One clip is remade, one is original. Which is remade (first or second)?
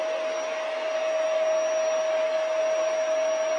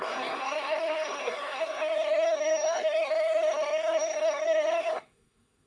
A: second